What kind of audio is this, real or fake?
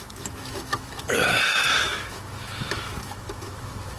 fake